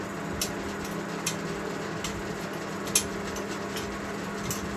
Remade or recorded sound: recorded